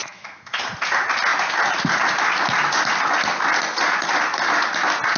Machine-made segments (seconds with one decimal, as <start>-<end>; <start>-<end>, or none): 0.0-0.6